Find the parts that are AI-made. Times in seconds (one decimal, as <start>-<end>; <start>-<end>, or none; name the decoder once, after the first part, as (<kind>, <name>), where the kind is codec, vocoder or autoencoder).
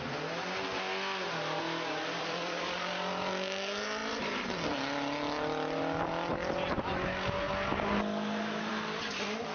none